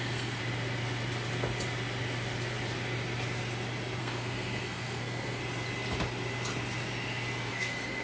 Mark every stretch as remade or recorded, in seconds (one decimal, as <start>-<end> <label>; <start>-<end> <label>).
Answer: 0.0-0.4 remade; 0.4-4.0 recorded; 4.0-5.4 remade; 5.4-7.5 recorded; 7.5-8.0 remade